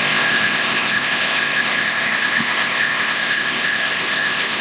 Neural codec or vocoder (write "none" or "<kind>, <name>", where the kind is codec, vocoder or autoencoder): codec, ZipCodec